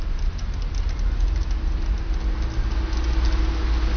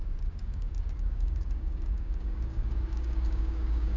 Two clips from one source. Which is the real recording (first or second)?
first